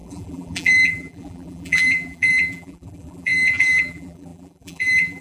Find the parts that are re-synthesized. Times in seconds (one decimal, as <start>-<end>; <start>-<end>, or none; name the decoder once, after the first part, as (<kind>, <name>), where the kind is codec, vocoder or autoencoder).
0.0-5.2 (vocoder, BigVGAN v2)

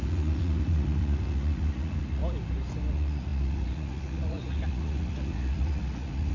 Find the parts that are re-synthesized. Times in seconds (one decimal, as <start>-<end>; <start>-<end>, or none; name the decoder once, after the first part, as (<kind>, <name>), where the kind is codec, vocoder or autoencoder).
0.0-2.2 (vocoder, Vocos); 2.9-6.3

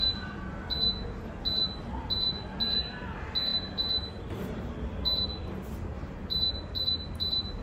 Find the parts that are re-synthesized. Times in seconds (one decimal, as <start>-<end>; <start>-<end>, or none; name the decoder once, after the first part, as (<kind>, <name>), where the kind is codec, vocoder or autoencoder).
3.5-4.7 (vocoder, BigVGAN v2)

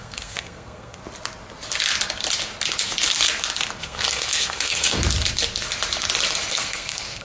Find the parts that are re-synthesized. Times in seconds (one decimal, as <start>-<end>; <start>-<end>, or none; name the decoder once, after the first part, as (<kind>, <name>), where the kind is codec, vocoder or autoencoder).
0.0-1.0 (codec, SNAC); 3.8-5.0; 6.5-7.2